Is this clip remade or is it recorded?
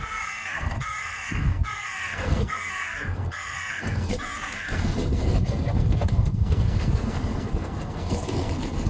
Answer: remade